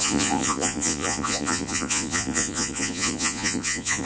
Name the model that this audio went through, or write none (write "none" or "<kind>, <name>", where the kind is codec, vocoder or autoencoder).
vocoder, Vocos